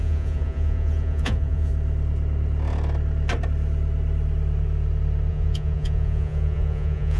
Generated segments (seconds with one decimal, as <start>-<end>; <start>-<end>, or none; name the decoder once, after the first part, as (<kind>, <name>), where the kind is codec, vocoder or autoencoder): 0.0-1.7 (vocoder, Vocos); 5.3-7.2